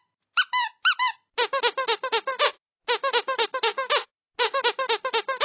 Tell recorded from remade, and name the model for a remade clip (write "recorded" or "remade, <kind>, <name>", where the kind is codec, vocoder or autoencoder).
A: recorded